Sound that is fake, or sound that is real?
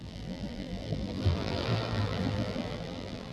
fake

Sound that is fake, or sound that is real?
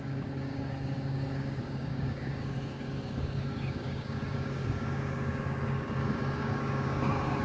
fake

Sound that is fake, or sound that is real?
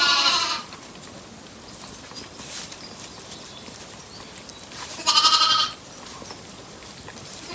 real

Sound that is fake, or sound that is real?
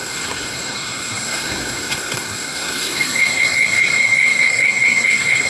fake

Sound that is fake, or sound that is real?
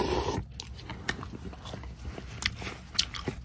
real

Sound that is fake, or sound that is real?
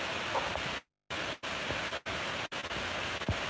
real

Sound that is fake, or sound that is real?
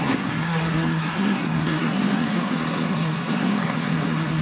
fake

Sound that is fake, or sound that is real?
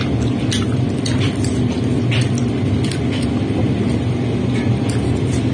real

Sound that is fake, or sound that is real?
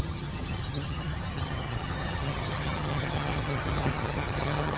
fake